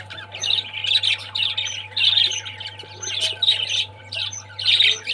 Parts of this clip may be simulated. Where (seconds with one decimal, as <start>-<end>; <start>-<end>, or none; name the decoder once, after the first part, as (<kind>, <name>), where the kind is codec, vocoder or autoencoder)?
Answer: 0.0-0.8 (vocoder, BigVGAN v2); 3.9-5.1